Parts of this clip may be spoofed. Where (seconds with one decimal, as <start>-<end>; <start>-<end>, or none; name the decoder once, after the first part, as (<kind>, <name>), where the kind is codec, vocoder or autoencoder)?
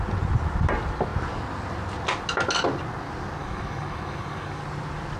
3.4-4.6 (codec, DAC)